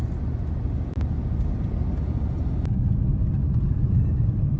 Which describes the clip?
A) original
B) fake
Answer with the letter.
A